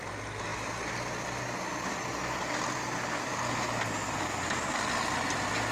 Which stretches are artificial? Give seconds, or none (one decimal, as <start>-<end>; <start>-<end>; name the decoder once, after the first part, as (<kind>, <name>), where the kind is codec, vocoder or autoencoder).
none